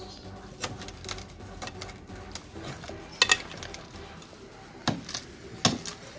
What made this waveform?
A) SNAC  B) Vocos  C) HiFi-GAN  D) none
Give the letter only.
D